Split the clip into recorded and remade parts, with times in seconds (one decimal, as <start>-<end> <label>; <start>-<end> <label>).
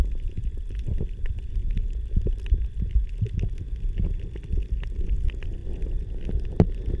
0.0-7.0 recorded